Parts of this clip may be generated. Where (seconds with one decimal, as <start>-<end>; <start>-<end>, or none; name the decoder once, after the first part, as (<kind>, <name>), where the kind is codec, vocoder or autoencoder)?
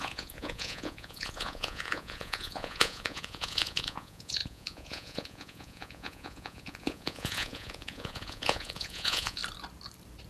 0.0-9.4 (vocoder, Vocos)